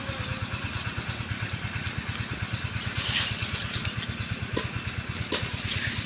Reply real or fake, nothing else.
real